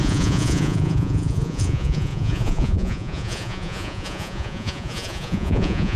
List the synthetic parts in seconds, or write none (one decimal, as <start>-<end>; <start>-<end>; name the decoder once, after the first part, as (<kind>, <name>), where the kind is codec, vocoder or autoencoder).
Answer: 0.0-6.0 (vocoder, Vocos)

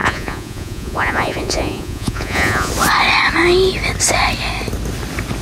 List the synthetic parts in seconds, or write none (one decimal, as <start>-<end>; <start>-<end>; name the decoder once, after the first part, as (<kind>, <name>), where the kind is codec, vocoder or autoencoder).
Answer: 0.0-2.7 (vocoder, Vocos)

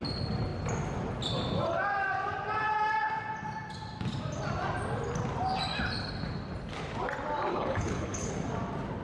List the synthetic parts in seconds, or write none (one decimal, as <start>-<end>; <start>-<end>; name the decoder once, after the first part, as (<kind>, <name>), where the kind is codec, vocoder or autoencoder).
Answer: 7.5-8.3 (codec, HILCodec)